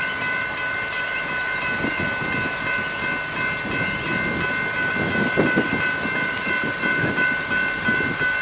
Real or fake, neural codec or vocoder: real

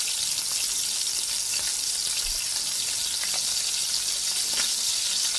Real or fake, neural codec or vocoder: real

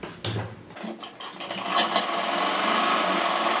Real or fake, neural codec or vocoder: real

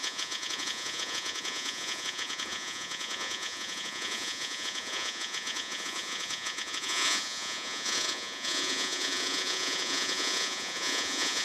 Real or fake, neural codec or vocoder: fake, vocoder, Vocos